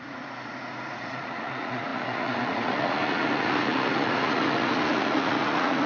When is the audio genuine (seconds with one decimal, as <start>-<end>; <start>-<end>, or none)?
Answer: none